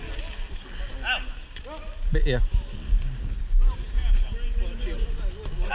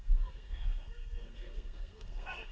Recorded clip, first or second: first